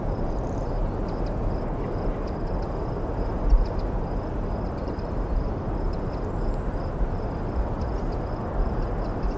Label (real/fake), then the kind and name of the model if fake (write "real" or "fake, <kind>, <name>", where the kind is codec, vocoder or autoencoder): real